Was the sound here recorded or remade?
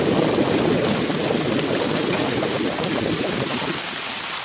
recorded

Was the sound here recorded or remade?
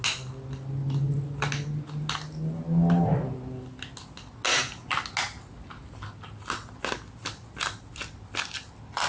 recorded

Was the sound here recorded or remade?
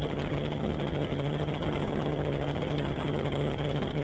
remade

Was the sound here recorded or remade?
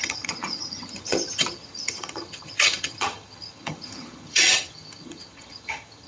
remade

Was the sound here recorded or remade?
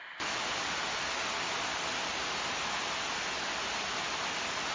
recorded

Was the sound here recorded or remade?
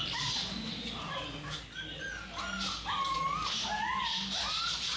recorded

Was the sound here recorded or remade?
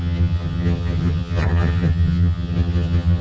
remade